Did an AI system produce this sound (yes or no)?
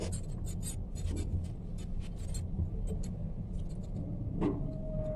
no